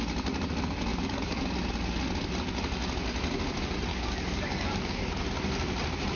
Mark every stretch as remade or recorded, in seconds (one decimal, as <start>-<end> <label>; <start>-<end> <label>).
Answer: 0.0-0.9 recorded; 0.9-1.5 remade; 1.5-3.9 recorded; 3.9-5.1 remade; 5.1-6.2 recorded